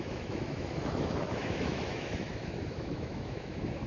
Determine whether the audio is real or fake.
fake